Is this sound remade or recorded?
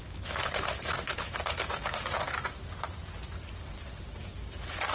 recorded